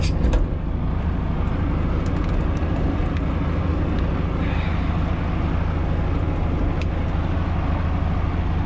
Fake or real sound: real